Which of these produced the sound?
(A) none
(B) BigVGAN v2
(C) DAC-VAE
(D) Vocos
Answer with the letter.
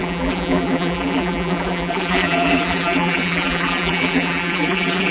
B